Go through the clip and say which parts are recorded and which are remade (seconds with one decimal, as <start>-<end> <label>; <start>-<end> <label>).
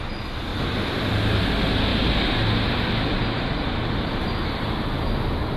0.0-5.6 recorded